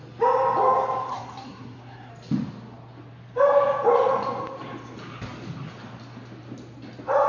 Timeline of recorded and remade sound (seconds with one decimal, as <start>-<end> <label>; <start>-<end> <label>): 0.0-1.1 recorded; 1.1-2.1 remade; 2.1-7.3 recorded